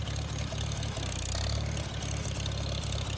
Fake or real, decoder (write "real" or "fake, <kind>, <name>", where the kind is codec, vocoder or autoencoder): real